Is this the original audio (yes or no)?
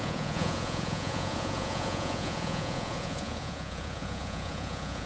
no